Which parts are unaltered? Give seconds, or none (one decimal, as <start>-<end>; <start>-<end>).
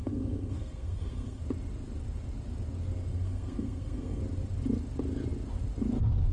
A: 1.4-3.1; 4.2-6.3